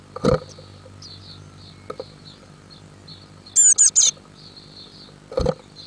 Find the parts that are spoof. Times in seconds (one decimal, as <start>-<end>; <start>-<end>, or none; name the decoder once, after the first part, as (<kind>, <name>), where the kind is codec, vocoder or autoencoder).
none